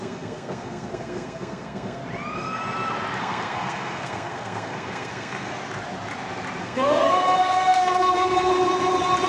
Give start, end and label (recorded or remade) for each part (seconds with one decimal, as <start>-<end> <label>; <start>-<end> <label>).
0.0-2.0 remade; 2.0-3.2 recorded; 3.2-5.5 remade; 5.5-6.6 recorded; 6.6-8.5 remade; 8.5-9.3 recorded